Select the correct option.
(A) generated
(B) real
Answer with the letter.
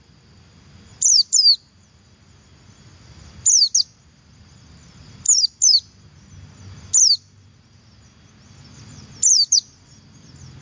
B